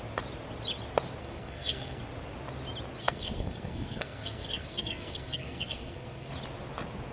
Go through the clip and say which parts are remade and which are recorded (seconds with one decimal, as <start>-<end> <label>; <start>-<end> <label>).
0.0-1.2 recorded; 1.2-2.0 remade; 2.0-3.0 recorded; 3.0-6.3 remade; 6.3-7.1 recorded

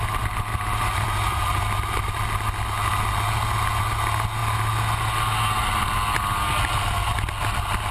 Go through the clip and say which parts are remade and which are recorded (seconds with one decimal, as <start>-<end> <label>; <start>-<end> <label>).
0.0-0.5 recorded; 0.5-1.6 remade; 1.6-7.9 recorded

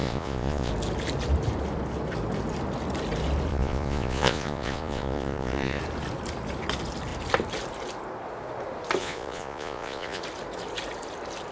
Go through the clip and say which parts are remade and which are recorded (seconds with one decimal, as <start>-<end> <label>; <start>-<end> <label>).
0.0-0.7 remade; 0.7-3.5 recorded; 3.5-5.8 remade; 5.8-9.0 recorded; 9.0-10.2 remade; 10.2-11.5 recorded

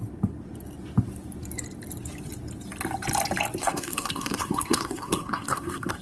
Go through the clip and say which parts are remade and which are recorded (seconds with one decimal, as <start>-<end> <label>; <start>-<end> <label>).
0.0-3.6 recorded; 3.6-6.0 remade

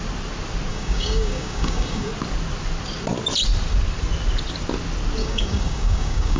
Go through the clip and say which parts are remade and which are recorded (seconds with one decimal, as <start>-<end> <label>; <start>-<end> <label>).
0.0-0.7 recorded; 0.7-2.1 remade; 2.1-5.2 recorded; 5.2-6.4 remade

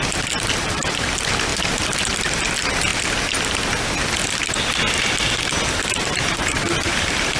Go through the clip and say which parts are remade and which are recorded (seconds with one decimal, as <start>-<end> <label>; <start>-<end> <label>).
0.0-1.5 remade; 1.5-2.2 recorded; 2.2-2.9 remade; 2.9-5.7 recorded; 5.7-7.4 remade

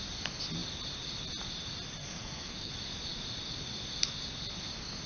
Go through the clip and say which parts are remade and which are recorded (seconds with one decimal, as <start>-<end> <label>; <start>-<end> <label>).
0.0-2.0 recorded; 2.0-2.7 remade; 2.7-5.1 recorded